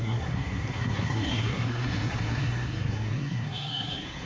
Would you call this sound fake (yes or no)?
yes